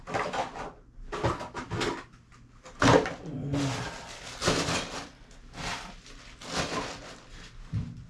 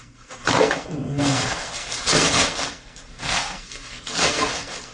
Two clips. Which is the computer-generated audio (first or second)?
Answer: second